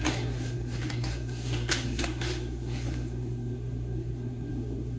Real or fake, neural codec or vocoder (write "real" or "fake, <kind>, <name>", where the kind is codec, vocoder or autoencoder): fake, codec, SNAC